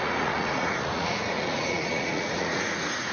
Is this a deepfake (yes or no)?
yes